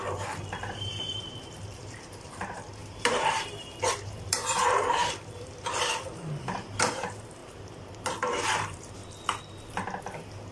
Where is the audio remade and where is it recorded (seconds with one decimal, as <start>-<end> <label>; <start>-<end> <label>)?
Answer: 0.0-9.0 remade; 9.0-10.0 recorded; 10.0-10.5 remade